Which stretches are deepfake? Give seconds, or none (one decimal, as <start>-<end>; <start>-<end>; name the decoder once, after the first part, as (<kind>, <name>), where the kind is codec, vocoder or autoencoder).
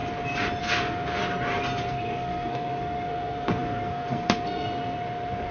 0.6-1.2 (codec, SNAC); 1.9-5.5